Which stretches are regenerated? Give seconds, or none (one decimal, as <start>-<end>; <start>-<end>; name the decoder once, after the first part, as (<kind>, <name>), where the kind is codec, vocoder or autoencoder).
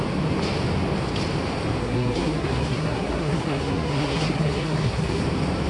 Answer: 1.8-5.2 (codec, SNAC)